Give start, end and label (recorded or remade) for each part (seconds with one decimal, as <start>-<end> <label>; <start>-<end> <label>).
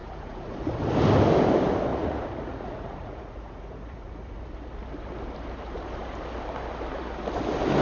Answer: 0.0-0.7 remade; 0.7-1.9 recorded; 1.9-4.4 remade; 4.4-7.8 recorded